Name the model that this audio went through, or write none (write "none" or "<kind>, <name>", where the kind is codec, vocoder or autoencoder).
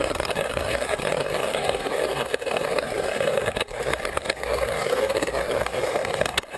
codec, SNAC